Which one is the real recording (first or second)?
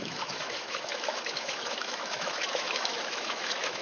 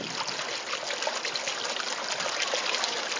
second